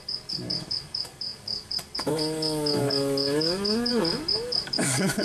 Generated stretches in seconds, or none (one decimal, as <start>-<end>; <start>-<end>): 0.0-5.2